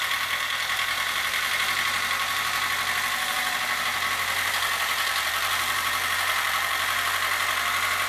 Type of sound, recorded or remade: remade